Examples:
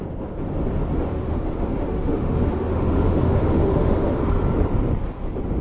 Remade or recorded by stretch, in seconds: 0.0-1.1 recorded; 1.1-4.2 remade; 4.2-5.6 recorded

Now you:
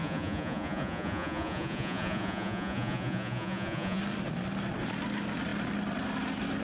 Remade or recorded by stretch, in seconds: 0.0-4.0 remade; 4.0-6.6 recorded

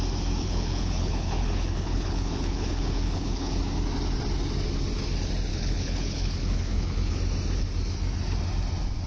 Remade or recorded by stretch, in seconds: 0.0-0.4 recorded; 0.4-3.6 remade; 3.6-5.5 recorded; 5.5-7.2 remade; 7.2-9.1 recorded

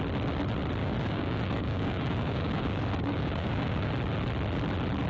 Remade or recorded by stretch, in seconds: 0.0-0.8 recorded; 0.8-3.9 remade; 3.9-5.1 recorded

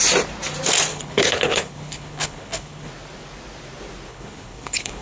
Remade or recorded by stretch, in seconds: 0.0-0.9 recorded; 0.9-2.9 remade; 2.9-4.1 recorded; 4.1-5.0 remade

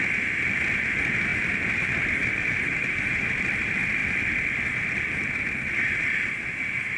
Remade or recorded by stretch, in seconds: 0.0-1.3 recorded; 1.3-3.3 remade; 3.3-7.0 recorded

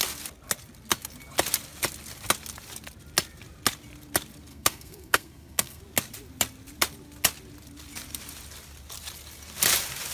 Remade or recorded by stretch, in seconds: 0.0-4.5 recorded; 4.5-5.8 remade; 5.8-10.1 recorded